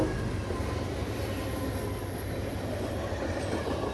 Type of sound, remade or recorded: recorded